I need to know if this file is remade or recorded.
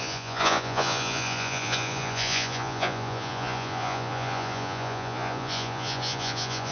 remade